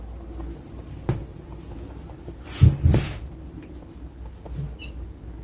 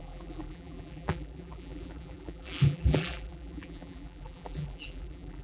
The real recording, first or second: first